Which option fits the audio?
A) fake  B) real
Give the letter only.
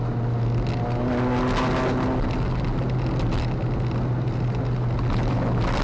B